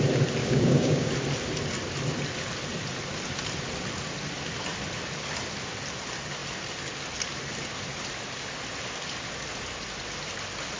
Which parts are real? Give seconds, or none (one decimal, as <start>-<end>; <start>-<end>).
0.0-0.4; 1.1-10.8